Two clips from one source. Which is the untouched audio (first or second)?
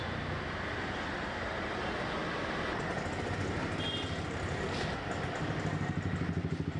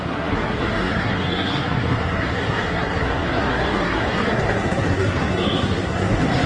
first